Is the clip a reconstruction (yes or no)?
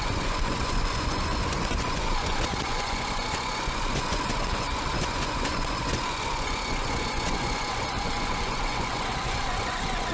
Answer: yes